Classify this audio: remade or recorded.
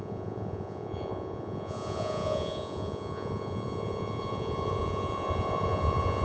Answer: remade